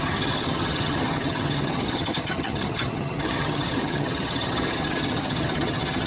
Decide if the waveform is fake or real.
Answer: fake